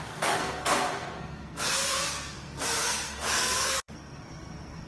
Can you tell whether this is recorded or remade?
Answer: remade